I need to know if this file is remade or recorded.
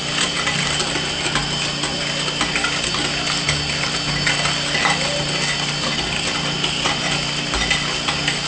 recorded